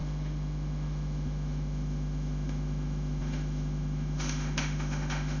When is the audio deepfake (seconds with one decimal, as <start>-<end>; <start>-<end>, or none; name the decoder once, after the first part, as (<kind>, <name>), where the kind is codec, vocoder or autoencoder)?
0.0-5.4 (autoencoder, DAC-VAE)